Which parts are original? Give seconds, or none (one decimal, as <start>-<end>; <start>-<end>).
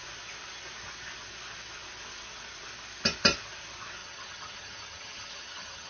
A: 0.0-4.0